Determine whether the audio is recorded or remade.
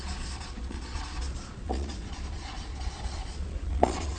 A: remade